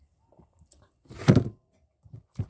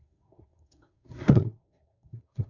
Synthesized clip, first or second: second